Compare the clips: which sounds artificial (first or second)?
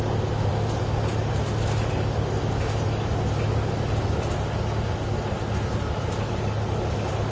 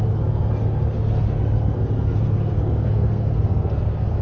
second